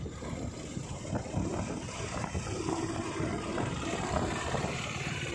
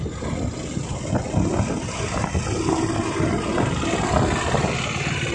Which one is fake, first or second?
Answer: first